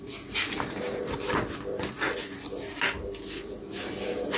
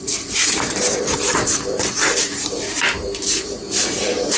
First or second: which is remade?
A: second